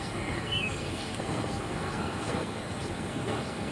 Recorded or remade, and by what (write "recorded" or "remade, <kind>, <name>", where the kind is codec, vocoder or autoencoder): remade, codec, SNAC